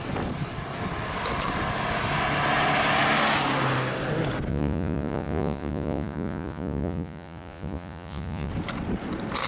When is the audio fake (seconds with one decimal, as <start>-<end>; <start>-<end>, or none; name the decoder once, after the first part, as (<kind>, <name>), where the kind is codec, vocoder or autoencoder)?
4.5-8.5 (vocoder, Vocos)